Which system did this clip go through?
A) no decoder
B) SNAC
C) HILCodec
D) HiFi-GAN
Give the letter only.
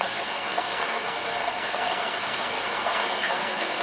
B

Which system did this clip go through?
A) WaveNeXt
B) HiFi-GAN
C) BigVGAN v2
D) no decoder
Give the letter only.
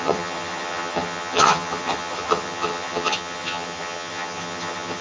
B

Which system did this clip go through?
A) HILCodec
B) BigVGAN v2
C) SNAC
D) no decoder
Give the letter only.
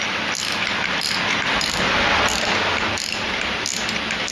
D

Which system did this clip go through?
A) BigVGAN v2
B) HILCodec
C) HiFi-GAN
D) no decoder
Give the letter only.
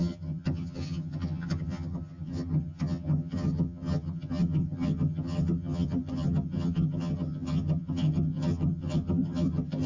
C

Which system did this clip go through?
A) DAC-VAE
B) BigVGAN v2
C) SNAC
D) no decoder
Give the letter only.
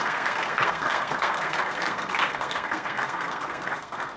C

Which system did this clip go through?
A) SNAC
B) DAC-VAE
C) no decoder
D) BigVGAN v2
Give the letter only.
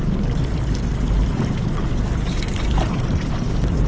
D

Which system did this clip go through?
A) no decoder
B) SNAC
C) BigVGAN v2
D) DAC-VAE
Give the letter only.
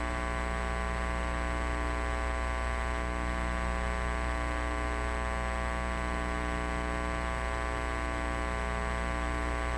A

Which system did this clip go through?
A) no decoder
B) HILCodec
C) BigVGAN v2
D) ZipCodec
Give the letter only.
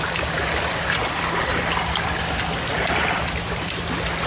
A